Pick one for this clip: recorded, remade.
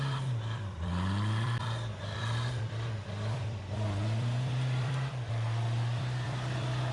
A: remade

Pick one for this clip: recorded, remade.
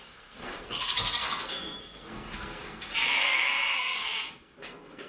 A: remade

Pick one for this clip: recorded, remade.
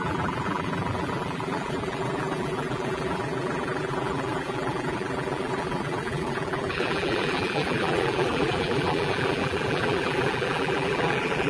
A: remade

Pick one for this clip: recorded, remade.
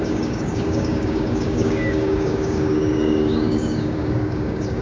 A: remade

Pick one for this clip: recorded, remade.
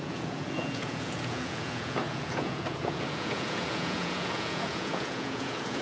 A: remade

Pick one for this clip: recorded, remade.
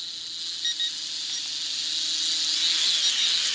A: recorded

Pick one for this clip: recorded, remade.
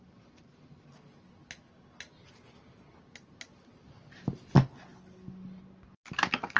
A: recorded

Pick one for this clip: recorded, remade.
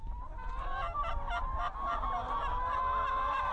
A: recorded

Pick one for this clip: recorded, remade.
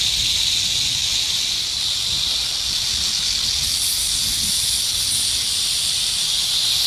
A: recorded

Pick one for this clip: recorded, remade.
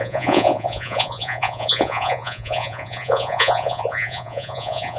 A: remade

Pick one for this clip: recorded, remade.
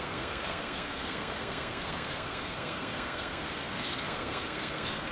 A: remade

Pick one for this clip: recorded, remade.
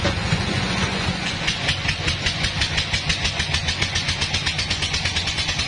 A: remade